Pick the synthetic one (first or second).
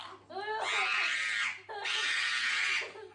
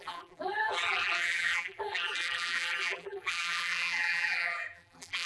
second